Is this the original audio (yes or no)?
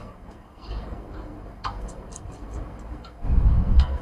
no